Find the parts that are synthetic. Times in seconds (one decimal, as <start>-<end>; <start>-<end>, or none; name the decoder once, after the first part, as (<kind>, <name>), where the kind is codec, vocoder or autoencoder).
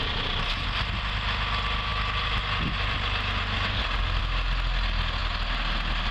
none